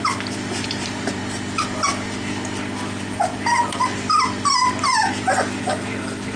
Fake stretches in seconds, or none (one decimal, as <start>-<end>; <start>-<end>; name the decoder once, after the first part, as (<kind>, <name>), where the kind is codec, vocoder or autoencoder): 0.0-1.2 (vocoder, BigVGAN v2); 4.8-6.4